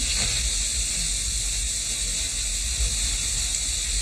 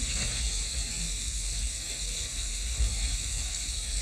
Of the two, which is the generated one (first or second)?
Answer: second